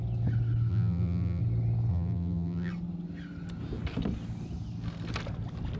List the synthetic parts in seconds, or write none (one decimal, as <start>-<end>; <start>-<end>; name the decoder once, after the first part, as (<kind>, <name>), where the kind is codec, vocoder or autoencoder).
0.7-1.4 (vocoder, BigVGAN v2); 1.9-2.7